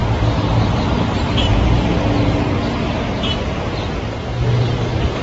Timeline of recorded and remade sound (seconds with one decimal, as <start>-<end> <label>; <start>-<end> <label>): 0.0-0.9 remade; 0.9-1.4 recorded; 1.4-2.2 remade; 2.2-5.2 recorded